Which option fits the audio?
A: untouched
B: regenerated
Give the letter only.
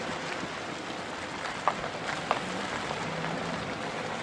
A